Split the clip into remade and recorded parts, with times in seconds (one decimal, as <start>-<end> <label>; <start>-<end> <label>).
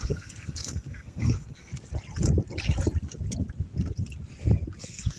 0.0-1.7 remade; 1.7-4.8 recorded; 4.8-5.2 remade